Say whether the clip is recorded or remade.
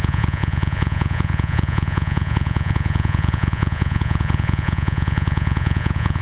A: remade